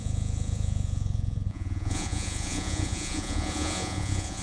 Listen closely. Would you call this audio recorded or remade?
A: remade